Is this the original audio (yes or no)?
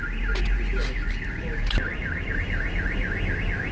yes